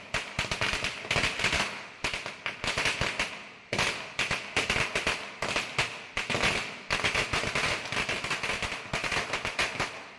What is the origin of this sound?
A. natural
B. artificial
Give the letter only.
A